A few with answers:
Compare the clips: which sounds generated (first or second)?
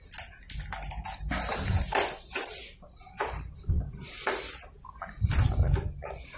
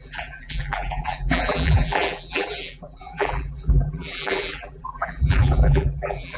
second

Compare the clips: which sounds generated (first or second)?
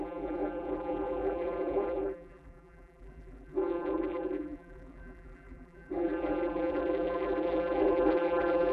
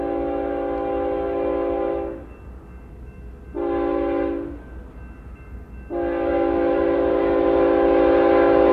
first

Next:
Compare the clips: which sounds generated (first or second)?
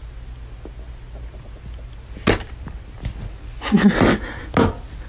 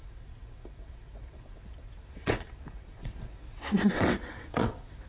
second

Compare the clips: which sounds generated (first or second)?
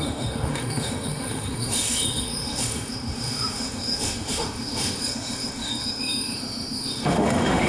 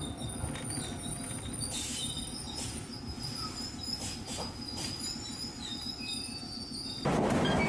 first